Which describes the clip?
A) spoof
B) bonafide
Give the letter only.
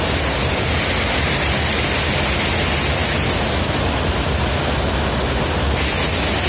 B